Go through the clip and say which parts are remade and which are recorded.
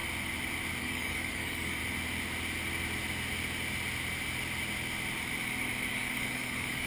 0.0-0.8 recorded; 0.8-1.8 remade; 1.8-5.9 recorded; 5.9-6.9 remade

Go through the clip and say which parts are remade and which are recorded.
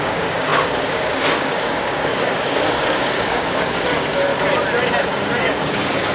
0.0-4.3 remade; 4.3-5.0 recorded; 5.0-6.1 remade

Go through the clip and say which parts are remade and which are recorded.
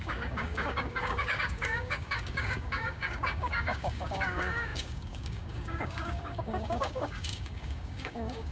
0.0-8.5 remade